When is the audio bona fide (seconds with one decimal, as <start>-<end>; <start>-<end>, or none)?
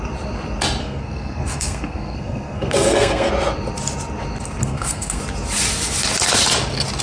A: 0.0-0.8; 3.3-4.6; 5.2-7.0